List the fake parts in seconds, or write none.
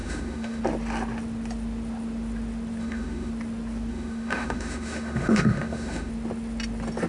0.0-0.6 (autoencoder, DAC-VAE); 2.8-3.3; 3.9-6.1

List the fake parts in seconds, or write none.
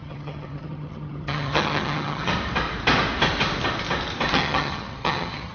0.0-2.3 (vocoder, HiFi-GAN); 4.3-5.5